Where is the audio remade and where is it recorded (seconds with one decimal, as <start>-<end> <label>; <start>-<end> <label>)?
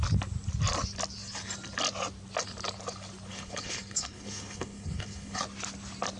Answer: 0.0-3.3 recorded; 3.3-5.4 remade; 5.4-6.2 recorded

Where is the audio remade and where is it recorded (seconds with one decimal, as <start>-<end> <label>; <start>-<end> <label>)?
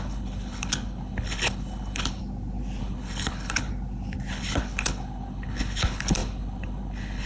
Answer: 0.0-2.2 remade; 2.2-2.8 recorded; 2.8-3.7 remade; 3.7-4.3 recorded; 4.3-7.3 remade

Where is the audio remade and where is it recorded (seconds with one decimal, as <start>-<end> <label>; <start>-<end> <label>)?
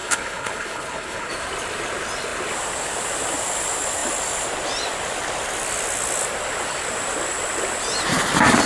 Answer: 0.0-1.3 remade; 1.3-8.7 recorded